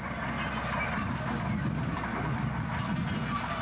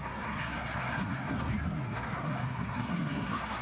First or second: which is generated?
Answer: second